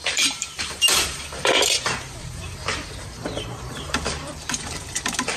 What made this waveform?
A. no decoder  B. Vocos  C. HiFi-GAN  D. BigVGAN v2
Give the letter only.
D